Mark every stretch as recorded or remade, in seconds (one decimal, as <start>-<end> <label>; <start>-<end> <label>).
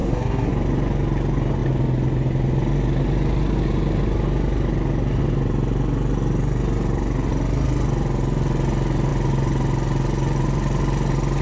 0.0-0.5 remade; 0.5-11.4 recorded